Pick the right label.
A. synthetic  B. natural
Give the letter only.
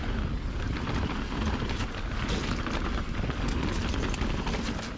B